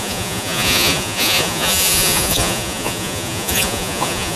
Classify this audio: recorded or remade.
remade